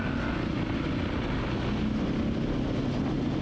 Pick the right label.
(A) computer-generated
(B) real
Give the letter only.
B